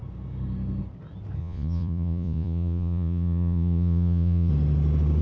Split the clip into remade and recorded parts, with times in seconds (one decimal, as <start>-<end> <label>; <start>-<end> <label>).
0.0-1.4 recorded; 1.4-4.5 remade; 4.5-5.2 recorded